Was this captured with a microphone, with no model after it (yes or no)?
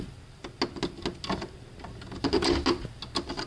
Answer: yes